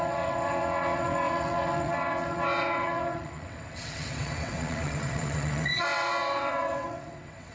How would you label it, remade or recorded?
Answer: remade